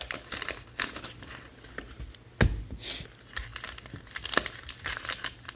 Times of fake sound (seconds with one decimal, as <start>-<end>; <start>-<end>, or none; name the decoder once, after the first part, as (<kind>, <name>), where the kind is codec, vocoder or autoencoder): none